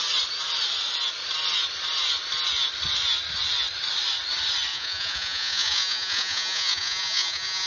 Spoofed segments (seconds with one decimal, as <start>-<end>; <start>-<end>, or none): 4.7-7.7

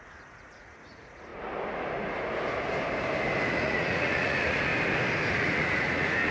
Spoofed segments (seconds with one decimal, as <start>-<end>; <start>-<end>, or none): 0.0-1.3; 3.5-4.7; 5.3-6.3

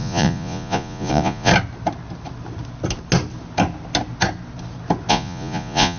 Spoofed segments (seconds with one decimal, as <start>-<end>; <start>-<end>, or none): 0.0-1.5; 5.1-6.0

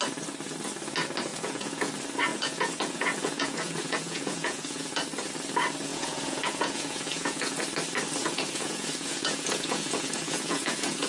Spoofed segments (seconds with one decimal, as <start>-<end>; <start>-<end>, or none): 1.3-1.9; 2.3-4.9; 5.9-7.6; 8.2-11.1

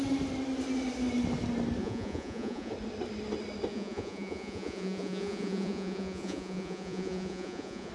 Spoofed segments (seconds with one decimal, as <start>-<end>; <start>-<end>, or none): 1.8-2.7; 3.7-7.9

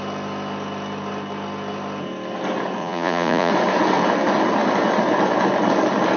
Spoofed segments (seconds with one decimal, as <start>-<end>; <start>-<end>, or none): 2.8-3.5